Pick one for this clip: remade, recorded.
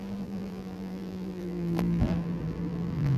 remade